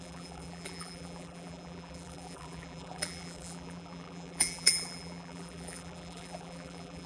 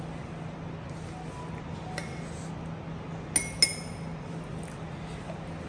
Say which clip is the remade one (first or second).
first